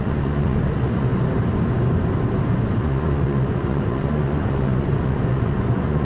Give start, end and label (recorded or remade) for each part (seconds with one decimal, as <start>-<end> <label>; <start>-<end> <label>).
0.0-1.1 remade; 1.1-2.8 recorded; 2.8-6.0 remade